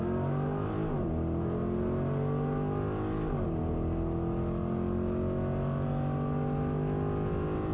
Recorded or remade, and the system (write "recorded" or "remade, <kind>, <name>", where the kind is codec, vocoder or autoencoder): recorded